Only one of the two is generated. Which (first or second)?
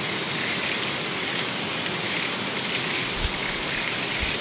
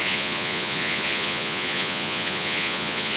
second